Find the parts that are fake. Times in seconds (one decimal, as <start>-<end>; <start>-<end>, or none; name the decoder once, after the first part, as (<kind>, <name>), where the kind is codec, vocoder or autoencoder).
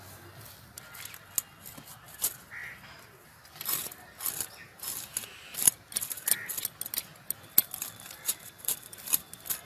2.6-3.8 (vocoder, BigVGAN v2)